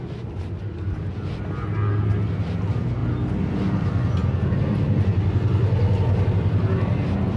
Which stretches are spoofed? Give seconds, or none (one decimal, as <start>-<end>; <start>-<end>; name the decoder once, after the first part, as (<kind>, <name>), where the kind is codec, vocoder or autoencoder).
none